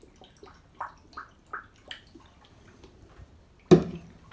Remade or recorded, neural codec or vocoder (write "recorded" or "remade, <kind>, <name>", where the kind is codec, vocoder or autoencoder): recorded